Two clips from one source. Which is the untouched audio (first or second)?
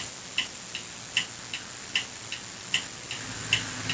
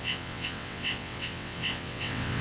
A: first